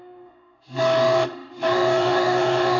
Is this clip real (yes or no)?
no